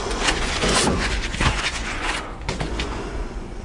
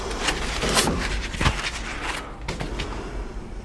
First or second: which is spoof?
first